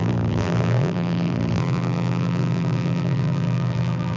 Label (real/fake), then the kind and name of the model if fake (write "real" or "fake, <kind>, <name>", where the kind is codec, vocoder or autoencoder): fake, vocoder, BigVGAN v2